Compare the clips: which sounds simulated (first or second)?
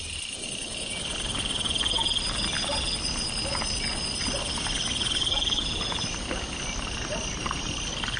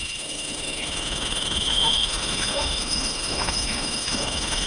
second